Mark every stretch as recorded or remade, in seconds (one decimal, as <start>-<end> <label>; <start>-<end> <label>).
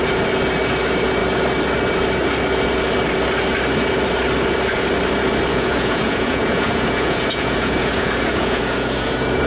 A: 0.0-5.5 recorded; 5.5-9.5 remade